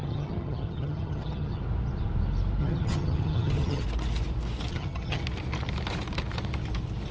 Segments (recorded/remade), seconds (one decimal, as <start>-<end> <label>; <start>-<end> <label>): 0.0-1.6 remade; 1.6-2.6 recorded; 2.6-3.8 remade; 3.8-4.7 recorded; 4.7-5.2 remade; 5.2-7.1 recorded